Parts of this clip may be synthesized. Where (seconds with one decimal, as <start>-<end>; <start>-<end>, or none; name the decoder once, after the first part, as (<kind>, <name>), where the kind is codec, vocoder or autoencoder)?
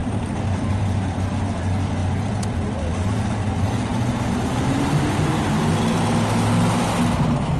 0.0-1.0 (vocoder, BigVGAN v2); 3.9-5.7